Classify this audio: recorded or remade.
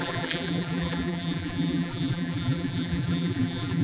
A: remade